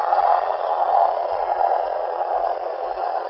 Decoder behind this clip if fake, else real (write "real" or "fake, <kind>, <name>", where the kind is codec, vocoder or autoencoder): fake, vocoder, Vocos